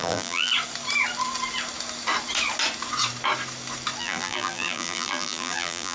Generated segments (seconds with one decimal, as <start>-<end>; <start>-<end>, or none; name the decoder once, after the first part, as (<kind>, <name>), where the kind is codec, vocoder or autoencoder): 0.0-0.5 (vocoder, BigVGAN v2); 4.0-5.9